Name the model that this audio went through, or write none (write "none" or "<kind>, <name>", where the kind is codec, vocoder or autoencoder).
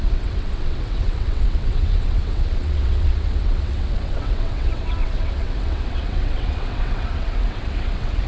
vocoder, WaveNeXt